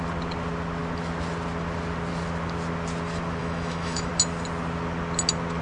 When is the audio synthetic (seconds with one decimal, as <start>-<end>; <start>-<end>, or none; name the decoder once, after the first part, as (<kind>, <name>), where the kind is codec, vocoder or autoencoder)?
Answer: 3.4-4.1 (autoencoder, DAC-VAE)